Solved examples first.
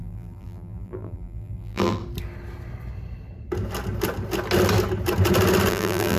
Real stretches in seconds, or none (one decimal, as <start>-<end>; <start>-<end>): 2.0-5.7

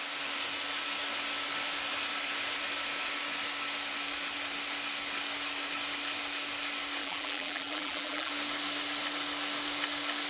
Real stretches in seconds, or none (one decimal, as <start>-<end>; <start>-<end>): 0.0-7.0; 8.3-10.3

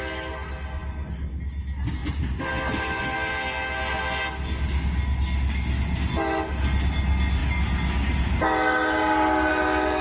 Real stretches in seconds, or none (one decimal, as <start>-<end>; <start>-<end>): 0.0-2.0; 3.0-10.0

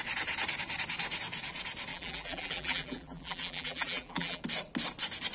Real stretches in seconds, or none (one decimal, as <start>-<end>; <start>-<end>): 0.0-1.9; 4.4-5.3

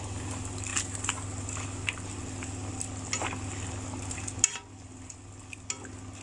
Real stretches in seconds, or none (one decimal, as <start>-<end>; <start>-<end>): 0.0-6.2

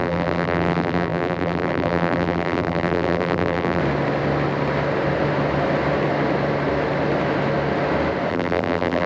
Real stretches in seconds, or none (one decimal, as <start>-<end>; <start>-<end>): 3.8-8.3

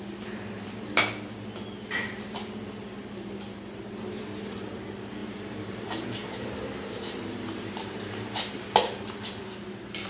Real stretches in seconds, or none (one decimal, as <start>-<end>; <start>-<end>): 0.0-5.2; 9.0-10.1